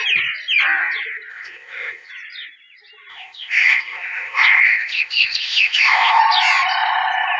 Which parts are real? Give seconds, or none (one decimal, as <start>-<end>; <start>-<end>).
0.0-1.3; 2.1-3.1; 6.2-7.4